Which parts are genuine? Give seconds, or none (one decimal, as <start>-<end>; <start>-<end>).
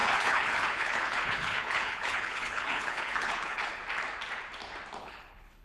3.8-5.0